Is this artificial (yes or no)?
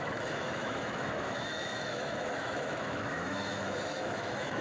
yes